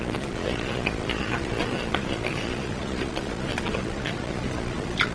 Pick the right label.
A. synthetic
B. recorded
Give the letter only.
A